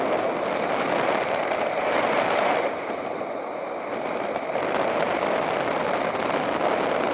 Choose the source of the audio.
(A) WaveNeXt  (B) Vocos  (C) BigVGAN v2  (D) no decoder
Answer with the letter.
D